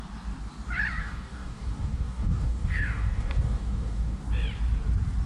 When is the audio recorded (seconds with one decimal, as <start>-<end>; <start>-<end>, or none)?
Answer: 0.0-1.0; 4.2-5.3